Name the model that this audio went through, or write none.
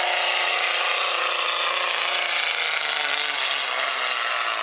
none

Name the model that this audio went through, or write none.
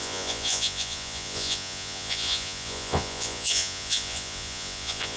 vocoder, Vocos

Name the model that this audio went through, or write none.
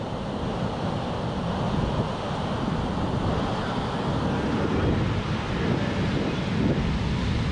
none